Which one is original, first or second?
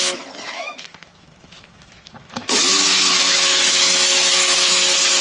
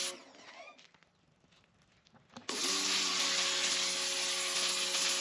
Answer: second